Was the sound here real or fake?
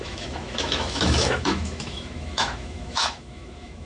fake